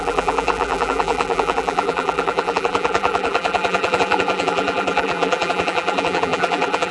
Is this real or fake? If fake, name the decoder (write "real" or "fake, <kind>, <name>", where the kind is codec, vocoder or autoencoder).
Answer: fake, vocoder, BigVGAN v2